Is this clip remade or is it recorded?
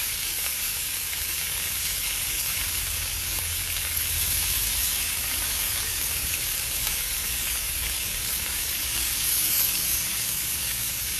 remade